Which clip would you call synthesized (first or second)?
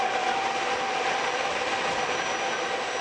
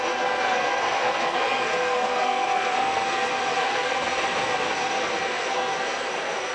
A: second